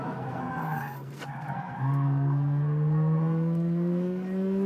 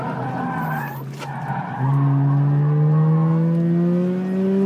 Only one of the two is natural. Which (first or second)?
second